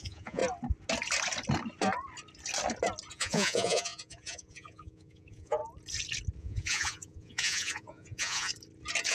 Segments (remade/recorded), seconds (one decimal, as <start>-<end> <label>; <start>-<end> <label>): 0.0-0.4 remade; 0.4-3.1 recorded; 3.1-5.6 remade; 5.6-6.4 recorded; 6.4-8.5 remade; 8.5-9.1 recorded